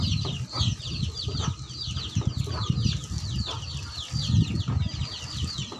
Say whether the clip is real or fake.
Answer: real